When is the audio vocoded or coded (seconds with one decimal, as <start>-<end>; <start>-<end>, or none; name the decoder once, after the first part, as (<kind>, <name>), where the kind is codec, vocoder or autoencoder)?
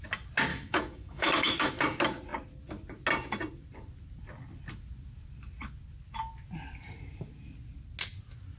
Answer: 0.5-1.7 (autoencoder, DAC-VAE)